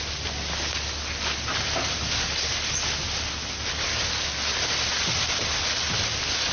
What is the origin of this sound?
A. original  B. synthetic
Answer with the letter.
A